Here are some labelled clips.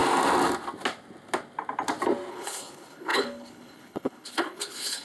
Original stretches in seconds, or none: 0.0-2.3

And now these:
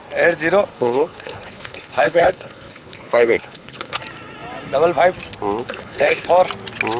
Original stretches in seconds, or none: 0.0-0.7; 4.0-5.6; 6.3-7.0

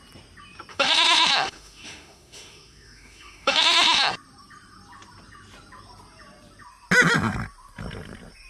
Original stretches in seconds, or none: 0.0-0.7; 4.1-8.5

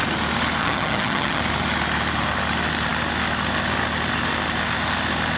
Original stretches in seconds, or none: 0.0-0.6; 1.4-5.4

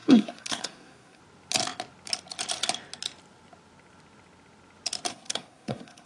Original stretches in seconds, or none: 1.2-5.1

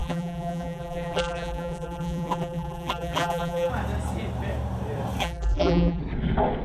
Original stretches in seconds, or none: 3.7-5.2; 6.0-6.6

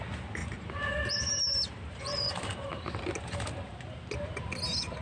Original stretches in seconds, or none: 0.0-5.0

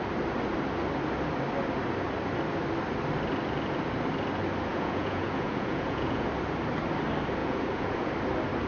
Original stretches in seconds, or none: 0.0-4.7; 6.3-7.4; 8.1-8.7